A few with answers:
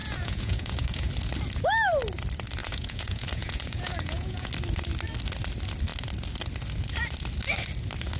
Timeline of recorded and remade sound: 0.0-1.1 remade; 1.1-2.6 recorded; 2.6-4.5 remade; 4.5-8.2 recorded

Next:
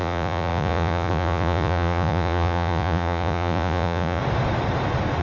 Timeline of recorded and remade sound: 0.0-4.2 remade; 4.2-5.2 recorded